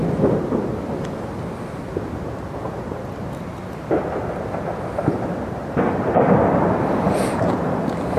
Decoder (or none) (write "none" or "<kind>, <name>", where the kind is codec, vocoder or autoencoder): none